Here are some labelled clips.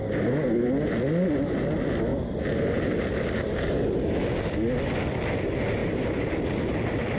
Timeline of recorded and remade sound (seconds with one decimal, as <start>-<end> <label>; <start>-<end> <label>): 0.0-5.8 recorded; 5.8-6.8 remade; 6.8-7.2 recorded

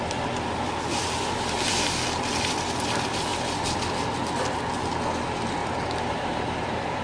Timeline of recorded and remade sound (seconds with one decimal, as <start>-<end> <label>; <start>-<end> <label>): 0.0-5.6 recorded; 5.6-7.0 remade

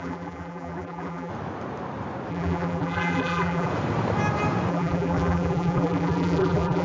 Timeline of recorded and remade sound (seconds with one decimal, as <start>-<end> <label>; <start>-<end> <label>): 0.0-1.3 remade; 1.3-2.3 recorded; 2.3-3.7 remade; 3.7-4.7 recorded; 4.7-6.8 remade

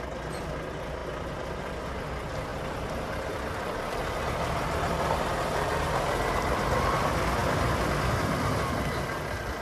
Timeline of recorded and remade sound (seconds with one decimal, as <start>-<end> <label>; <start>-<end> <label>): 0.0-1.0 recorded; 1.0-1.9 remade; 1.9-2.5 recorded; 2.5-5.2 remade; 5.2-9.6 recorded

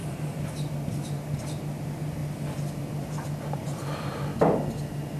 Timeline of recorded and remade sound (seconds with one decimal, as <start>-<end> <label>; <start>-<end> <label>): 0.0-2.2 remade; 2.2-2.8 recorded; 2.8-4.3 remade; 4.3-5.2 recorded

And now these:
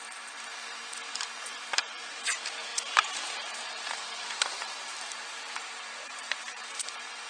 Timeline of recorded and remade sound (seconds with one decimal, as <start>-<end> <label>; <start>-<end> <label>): 0.0-2.7 recorded; 2.7-7.3 remade

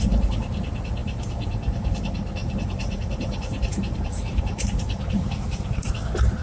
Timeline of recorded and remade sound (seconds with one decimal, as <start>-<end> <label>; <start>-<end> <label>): 0.0-1.0 recorded; 1.0-2.0 remade; 2.0-2.4 recorded; 2.4-5.9 remade; 5.9-6.4 recorded